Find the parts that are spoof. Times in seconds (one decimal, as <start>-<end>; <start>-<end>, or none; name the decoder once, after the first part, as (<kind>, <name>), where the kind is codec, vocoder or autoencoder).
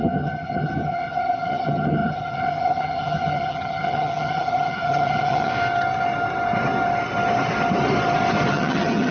0.0-5.5 (vocoder, HiFi-GAN); 8.5-9.1